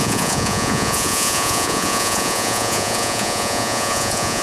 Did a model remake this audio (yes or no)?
yes